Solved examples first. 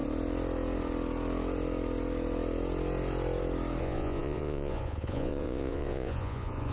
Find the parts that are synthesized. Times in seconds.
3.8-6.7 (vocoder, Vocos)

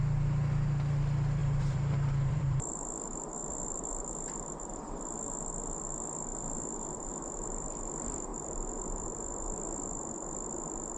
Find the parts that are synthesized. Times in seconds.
1.4-2.7 (vocoder, BigVGAN v2); 3.4-3.9; 8.3-10.6

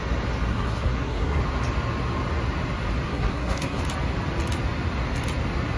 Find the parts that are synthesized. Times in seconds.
0.5-1.4 (codec, SNAC); 3.1-3.8

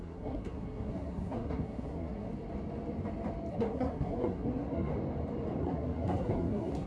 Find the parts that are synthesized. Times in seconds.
0.0-2.3 (codec, SNAC); 3.5-4.9; 5.6-6.9

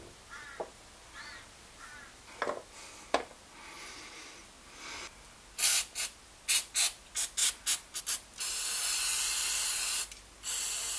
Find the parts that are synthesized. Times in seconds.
none

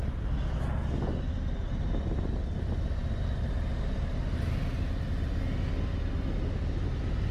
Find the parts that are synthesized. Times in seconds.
none